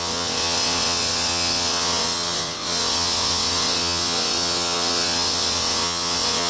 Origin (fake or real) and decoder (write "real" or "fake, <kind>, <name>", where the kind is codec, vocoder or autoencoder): fake, vocoder, WaveNeXt